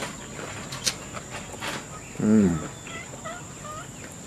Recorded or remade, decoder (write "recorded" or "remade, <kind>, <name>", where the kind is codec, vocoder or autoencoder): recorded